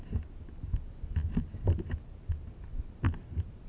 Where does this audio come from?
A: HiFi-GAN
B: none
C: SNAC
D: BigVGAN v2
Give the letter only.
B